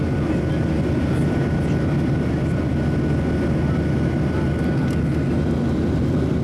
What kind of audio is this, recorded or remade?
recorded